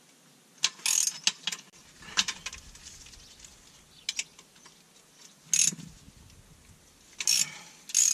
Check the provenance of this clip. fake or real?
real